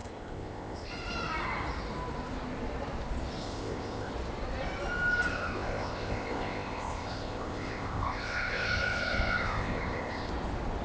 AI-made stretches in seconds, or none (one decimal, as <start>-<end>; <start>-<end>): 0.0-0.9; 3.4-4.1; 5.3-10.3